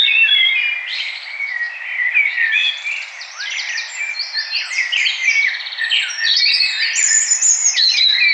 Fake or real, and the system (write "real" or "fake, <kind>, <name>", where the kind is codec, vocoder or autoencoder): real